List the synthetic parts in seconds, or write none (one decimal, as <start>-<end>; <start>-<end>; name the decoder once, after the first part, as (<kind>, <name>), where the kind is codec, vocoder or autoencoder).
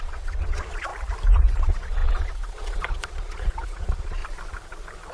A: 0.0-0.9 (vocoder, Vocos); 1.6-4.2